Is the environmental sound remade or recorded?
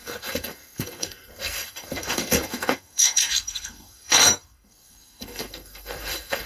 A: remade